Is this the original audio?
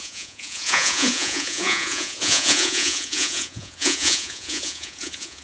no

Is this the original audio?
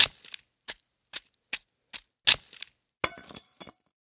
yes